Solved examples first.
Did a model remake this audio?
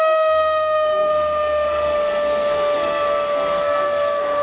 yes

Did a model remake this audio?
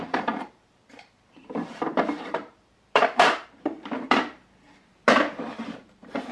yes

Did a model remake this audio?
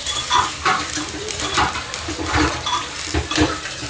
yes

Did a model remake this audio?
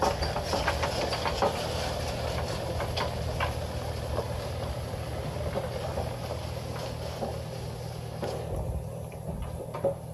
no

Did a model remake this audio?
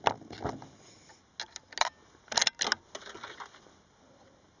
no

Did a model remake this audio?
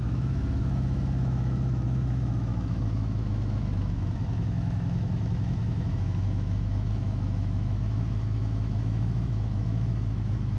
yes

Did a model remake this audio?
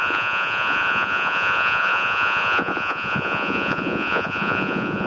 yes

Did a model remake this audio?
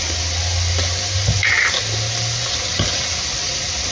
no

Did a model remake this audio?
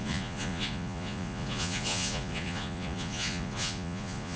yes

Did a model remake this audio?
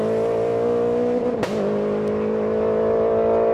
no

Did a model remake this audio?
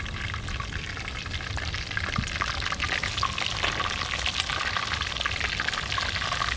no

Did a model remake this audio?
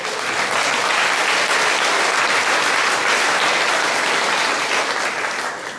no